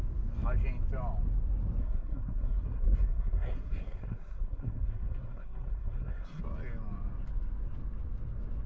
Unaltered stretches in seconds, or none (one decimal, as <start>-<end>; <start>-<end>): 0.0-1.8; 6.4-8.7